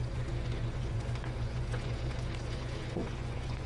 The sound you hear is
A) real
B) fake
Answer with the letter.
B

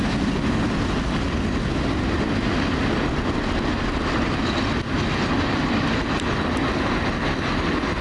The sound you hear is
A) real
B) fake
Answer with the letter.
A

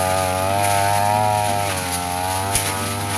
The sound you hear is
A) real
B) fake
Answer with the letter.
A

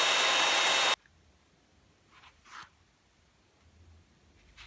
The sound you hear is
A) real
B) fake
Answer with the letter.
A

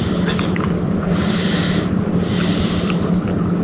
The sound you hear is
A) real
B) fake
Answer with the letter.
A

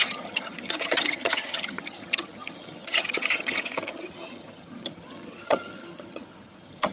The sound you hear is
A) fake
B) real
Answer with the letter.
A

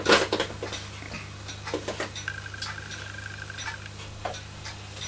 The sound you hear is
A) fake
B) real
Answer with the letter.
B